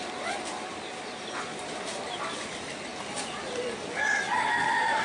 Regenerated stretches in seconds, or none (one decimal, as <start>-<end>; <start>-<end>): 0.0-2.9; 3.4-4.3